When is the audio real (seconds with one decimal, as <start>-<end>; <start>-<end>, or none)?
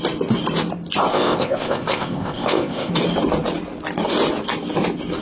0.0-1.1; 2.9-5.2